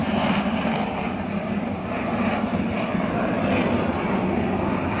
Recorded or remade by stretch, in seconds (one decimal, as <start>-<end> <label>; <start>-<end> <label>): 0.0-1.8 remade; 1.8-2.5 recorded; 2.5-3.5 remade; 3.5-5.0 recorded